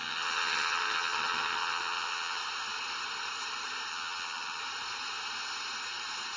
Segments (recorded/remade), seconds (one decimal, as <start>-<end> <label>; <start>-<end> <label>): 0.0-2.4 remade; 2.4-3.9 recorded; 3.9-4.6 remade; 4.6-6.4 recorded